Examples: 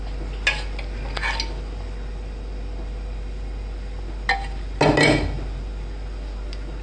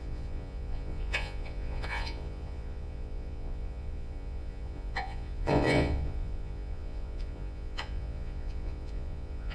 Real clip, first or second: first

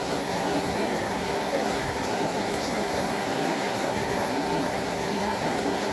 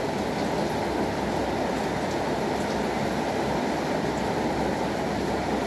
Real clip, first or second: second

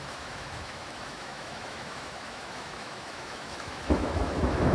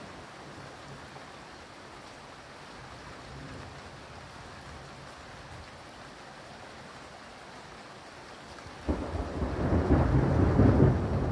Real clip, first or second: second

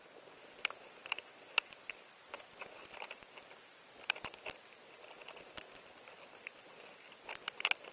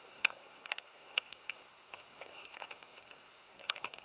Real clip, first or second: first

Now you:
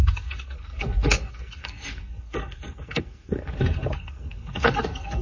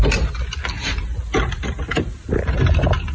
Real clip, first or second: second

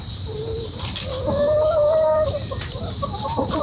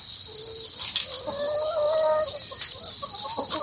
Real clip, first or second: second